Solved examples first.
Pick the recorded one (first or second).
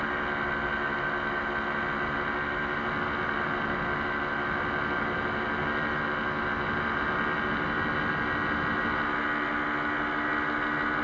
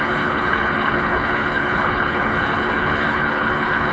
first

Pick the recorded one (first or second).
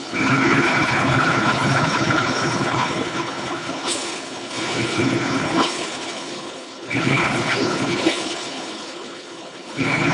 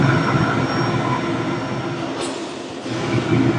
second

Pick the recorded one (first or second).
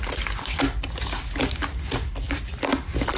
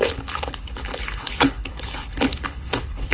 first